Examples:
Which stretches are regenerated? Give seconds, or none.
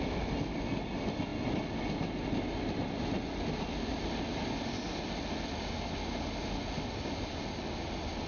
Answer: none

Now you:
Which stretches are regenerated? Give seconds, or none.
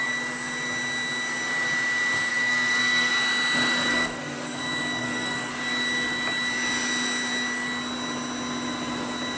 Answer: 2.3-3.1 (codec, SNAC); 3.9-4.6; 5.0-5.5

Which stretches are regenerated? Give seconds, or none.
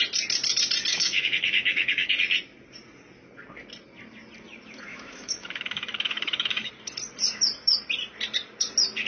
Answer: 0.9-2.1 (autoencoder, DAC-VAE); 4.9-6.7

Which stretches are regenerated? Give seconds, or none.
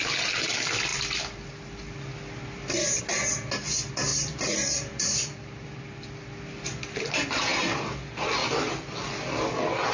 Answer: 4.1-5.8 (vocoder, BigVGAN v2); 7.5-8.0; 8.4-9.0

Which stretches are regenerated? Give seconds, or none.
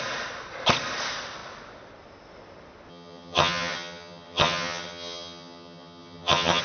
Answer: 2.9-6.6 (vocoder, HiFi-GAN)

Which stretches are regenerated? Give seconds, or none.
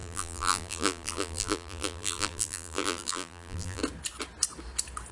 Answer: 0.0-3.8 (vocoder, BigVGAN v2)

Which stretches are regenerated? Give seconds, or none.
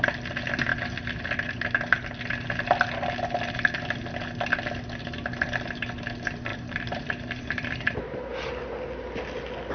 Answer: 6.5-8.5 (vocoder, BigVGAN v2)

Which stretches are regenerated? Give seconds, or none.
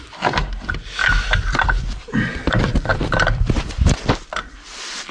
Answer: 0.0-5.1 (vocoder, BigVGAN v2)